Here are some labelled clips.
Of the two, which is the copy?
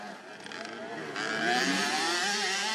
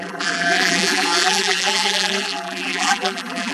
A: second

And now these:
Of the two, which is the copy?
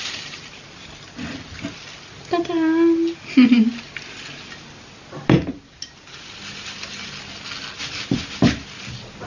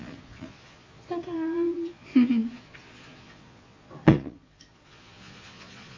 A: second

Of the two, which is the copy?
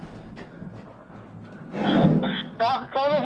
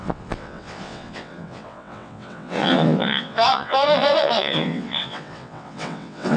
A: second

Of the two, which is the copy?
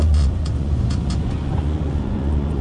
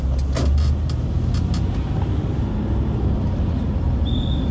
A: first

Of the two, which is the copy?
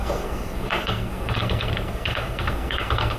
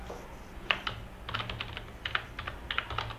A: first